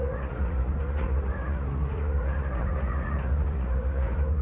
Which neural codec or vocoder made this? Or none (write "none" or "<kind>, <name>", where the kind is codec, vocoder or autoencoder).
vocoder, Vocos